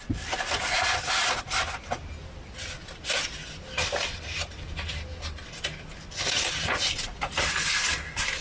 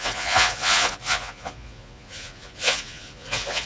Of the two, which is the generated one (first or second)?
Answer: second